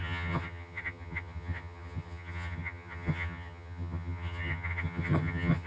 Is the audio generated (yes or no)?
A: yes